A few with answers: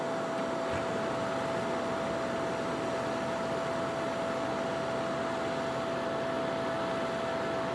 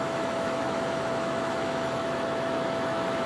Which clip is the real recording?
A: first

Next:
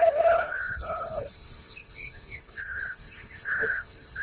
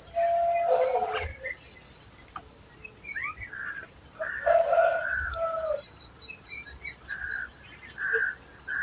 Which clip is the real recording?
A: second